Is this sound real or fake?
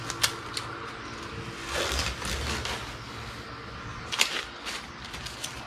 real